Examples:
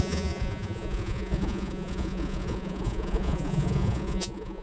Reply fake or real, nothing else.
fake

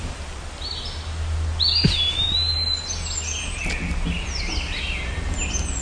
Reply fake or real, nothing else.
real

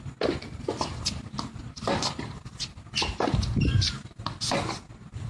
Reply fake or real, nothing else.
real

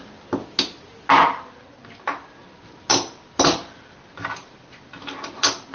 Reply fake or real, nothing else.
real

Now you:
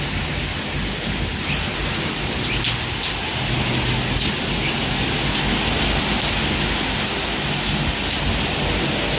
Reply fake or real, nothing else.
real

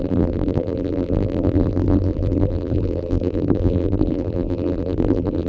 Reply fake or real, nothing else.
fake